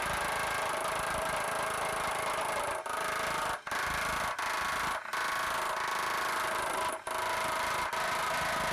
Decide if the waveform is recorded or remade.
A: recorded